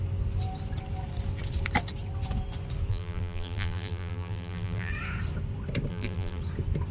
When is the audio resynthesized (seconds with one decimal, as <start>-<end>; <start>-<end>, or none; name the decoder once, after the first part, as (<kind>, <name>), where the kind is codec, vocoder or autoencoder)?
2.9-4.9 (vocoder, BigVGAN v2); 5.9-6.4